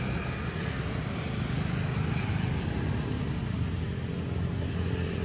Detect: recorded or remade recorded